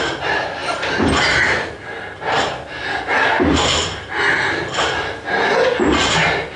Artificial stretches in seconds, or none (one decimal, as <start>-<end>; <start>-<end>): none